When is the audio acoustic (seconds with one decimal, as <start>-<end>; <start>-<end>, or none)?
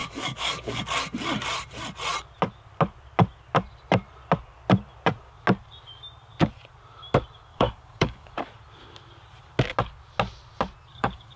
0.8-7.5; 8.3-10.9